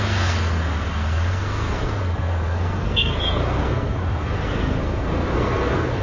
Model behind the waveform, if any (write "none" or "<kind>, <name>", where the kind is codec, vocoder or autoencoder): codec, SNAC